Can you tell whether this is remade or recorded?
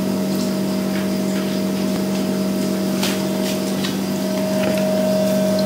recorded